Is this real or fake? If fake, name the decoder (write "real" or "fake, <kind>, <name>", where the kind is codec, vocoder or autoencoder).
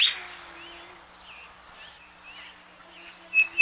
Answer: real